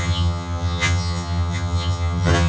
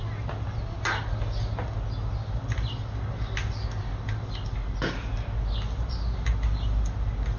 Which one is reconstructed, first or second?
first